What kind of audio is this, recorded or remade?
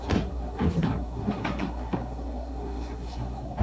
remade